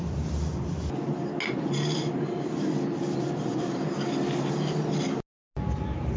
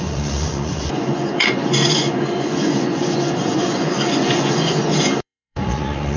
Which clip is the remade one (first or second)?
second